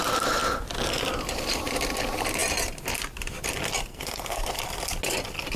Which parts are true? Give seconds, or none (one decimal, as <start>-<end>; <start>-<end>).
0.0-3.9; 4.5-5.6

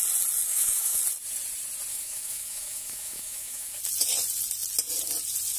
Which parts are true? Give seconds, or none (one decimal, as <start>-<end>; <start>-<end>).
0.0-0.5; 1.0-1.9; 3.8-5.6